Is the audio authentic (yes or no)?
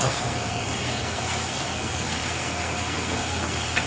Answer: no